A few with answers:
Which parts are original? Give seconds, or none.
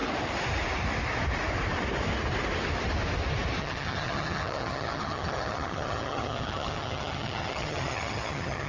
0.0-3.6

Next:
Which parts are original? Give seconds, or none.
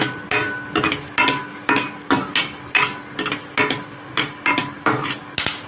0.0-4.6; 5.2-5.7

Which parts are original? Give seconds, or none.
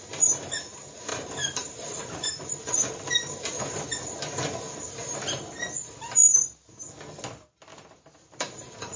0.0-1.1; 2.4-7.7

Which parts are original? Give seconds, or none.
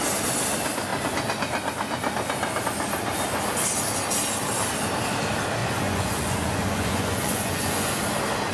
0.0-5.6; 8.0-8.5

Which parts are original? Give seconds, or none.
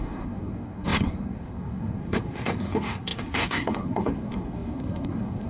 none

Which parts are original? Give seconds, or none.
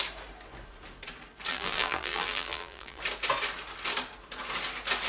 0.0-1.5; 3.0-5.1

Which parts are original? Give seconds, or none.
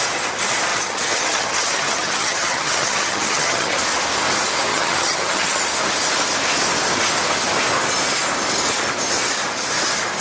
0.0-0.7; 3.8-4.7; 5.6-10.2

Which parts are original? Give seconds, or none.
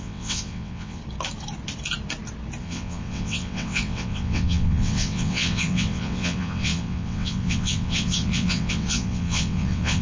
1.0-2.6